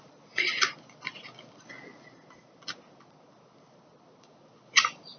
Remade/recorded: recorded